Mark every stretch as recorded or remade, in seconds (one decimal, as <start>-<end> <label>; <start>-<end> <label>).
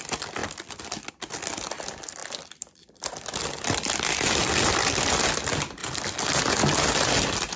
0.0-0.4 recorded; 0.4-1.1 remade; 1.1-2.2 recorded; 2.2-4.0 remade; 4.0-4.4 recorded; 4.4-5.1 remade; 5.1-5.8 recorded; 5.8-6.4 remade; 6.4-7.6 recorded